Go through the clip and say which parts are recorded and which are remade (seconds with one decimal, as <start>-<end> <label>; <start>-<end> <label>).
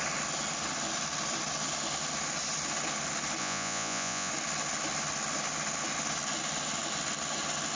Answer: 0.0-3.4 recorded; 3.4-4.3 remade; 4.3-7.7 recorded